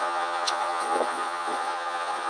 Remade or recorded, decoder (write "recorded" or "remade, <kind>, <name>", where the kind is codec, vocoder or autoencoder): remade, vocoder, Vocos